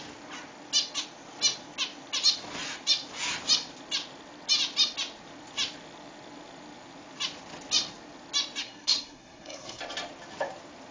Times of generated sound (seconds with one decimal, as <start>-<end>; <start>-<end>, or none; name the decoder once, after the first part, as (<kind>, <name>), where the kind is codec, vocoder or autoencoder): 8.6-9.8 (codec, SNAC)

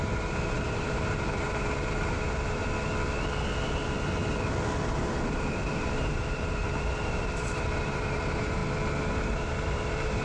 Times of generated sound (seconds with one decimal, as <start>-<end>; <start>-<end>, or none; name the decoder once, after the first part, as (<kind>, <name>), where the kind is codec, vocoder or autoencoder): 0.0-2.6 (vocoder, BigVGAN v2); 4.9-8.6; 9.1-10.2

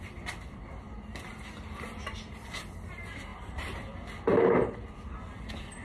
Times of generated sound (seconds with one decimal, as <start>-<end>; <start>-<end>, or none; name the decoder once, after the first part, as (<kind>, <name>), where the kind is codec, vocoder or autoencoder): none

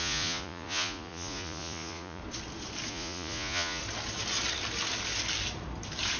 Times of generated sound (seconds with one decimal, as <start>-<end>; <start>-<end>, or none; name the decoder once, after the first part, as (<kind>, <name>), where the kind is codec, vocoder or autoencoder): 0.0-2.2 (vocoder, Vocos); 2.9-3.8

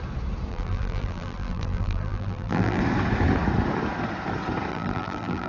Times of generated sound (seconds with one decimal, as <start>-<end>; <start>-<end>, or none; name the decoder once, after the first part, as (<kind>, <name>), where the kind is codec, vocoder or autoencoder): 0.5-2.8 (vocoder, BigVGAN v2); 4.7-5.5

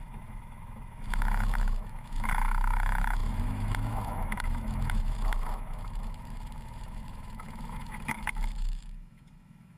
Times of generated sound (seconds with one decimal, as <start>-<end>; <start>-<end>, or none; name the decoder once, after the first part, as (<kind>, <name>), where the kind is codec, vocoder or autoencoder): 0.0-9.8 (autoencoder, DAC-VAE)

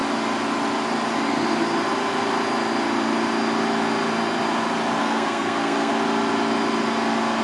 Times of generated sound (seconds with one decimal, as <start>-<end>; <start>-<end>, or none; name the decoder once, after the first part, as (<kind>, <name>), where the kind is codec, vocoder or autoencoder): 5.0-5.9 (codec, SNAC)